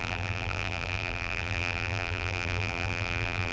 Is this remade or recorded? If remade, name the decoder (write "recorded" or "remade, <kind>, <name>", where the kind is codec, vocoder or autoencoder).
remade, vocoder, BigVGAN v2